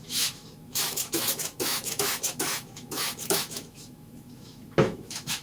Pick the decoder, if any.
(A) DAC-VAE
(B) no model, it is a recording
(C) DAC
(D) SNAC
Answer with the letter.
A